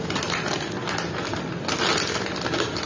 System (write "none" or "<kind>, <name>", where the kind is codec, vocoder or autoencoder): none